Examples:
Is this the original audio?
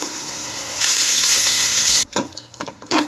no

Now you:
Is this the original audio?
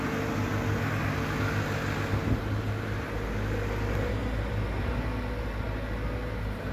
yes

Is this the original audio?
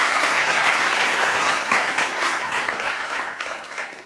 no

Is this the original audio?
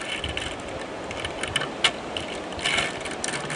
yes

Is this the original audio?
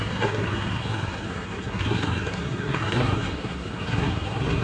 no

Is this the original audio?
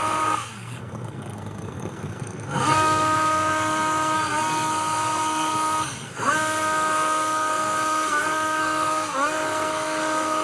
no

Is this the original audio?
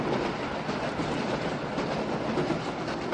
yes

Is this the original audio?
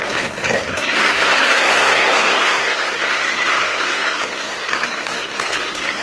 no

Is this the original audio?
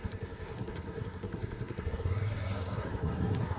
no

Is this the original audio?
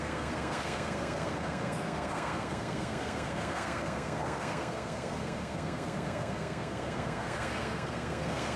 no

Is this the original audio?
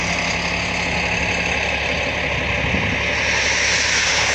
yes